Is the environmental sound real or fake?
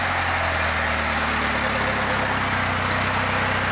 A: real